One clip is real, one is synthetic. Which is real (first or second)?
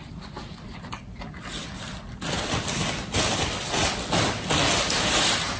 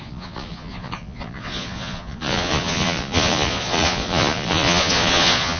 first